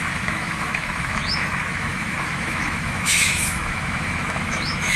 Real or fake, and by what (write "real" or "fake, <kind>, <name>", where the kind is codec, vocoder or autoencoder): fake, autoencoder, DAC-VAE